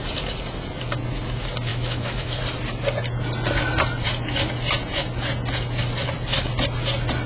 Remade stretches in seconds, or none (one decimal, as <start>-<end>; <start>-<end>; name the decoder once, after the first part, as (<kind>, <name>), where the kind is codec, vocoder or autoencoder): 1.7-2.4 (autoencoder, DAC-VAE)